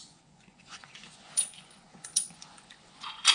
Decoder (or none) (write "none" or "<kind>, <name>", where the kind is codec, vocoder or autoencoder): vocoder, Vocos